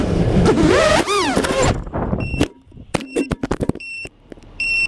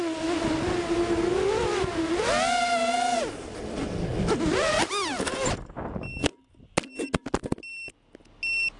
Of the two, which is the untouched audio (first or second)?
second